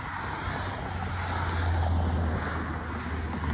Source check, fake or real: real